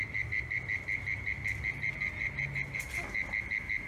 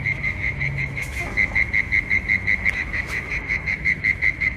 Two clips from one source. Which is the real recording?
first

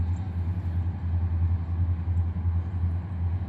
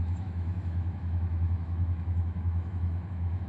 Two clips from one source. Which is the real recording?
first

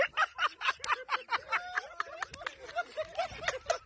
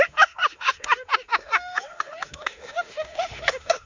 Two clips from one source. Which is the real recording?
first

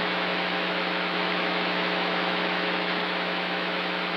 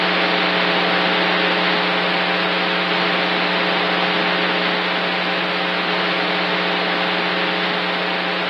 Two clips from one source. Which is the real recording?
second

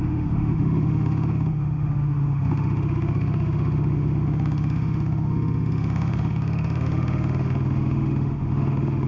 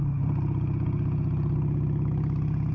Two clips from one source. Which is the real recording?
second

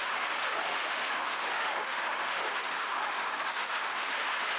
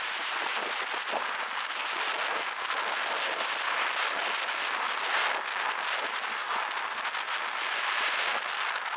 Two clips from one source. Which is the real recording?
second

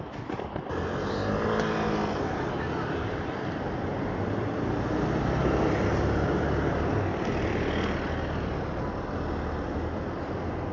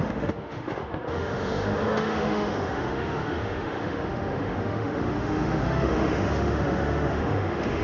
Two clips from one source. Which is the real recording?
first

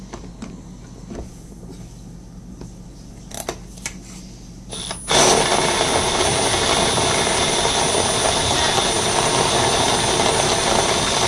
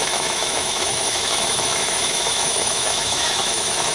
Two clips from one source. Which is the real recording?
first